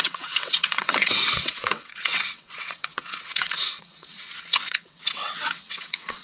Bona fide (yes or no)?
no